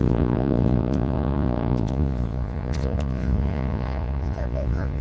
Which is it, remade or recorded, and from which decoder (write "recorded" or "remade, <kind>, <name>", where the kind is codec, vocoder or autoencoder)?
remade, vocoder, Vocos